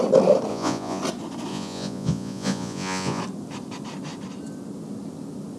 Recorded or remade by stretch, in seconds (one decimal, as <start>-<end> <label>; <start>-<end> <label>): 0.0-0.5 recorded; 0.5-1.0 remade; 1.0-1.5 recorded; 1.5-3.2 remade; 3.2-5.6 recorded